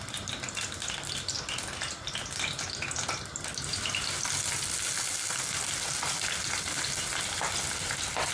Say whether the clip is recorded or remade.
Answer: recorded